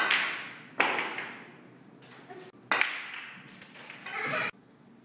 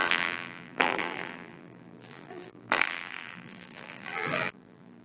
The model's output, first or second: second